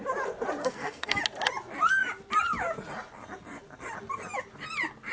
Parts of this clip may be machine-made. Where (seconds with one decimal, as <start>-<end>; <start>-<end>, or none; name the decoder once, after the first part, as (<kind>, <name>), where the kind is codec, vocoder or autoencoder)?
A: 0.6-1.2 (codec, SNAC)

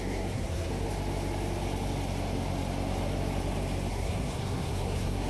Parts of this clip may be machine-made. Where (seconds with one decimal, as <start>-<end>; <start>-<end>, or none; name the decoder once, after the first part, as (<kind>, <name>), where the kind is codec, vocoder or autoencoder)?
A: 0.0-0.7 (codec, SNAC); 3.9-5.3

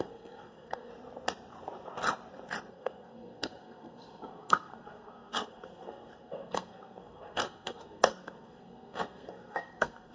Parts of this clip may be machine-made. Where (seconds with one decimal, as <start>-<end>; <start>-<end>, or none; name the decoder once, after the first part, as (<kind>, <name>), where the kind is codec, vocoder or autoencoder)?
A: 0.0-0.9 (codec, SNAC); 2.7-10.1

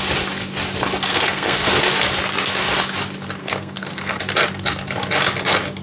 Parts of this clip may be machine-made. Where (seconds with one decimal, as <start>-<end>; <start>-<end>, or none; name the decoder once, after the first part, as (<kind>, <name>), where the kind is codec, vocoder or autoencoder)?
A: 1.1-1.8 (codec, SNAC); 3.4-4.2